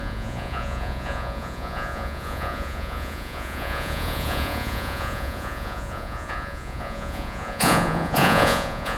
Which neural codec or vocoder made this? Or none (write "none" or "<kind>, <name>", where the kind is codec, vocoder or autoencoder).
vocoder, Vocos